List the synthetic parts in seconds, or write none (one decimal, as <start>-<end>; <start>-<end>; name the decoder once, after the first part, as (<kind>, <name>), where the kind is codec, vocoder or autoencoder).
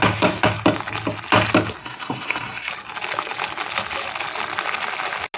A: 1.8-2.7 (codec, SNAC)